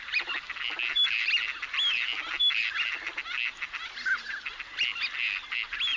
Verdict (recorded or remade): recorded